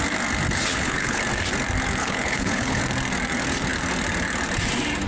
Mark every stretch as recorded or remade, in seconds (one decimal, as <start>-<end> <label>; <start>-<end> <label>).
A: 0.0-0.7 recorded; 0.7-1.2 remade; 1.2-2.0 recorded; 2.0-2.8 remade; 2.8-5.1 recorded